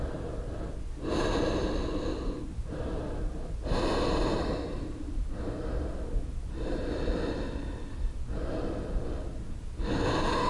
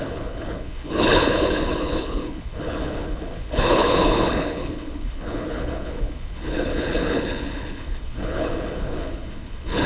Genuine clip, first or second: first